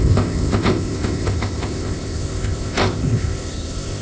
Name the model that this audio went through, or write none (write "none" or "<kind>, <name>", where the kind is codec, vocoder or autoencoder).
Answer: codec, ZipCodec